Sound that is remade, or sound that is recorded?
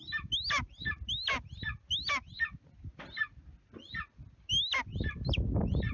recorded